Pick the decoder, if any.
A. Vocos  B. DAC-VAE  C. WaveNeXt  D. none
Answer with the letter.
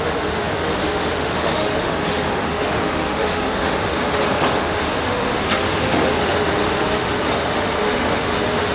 B